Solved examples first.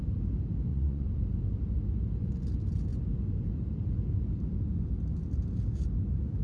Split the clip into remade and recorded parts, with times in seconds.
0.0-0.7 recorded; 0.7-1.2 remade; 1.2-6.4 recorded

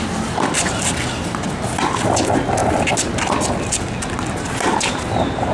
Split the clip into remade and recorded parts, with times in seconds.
0.0-5.5 recorded

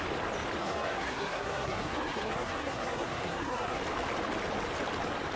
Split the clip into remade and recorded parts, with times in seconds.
0.0-0.6 recorded; 0.6-3.8 remade; 3.8-5.4 recorded

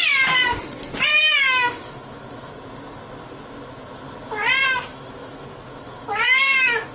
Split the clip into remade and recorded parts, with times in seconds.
0.0-1.1 recorded; 1.1-2.5 remade; 2.5-4.9 recorded; 4.9-6.9 remade

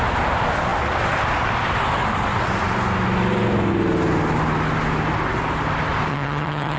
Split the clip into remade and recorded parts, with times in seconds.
0.0-6.1 recorded; 6.1-6.8 remade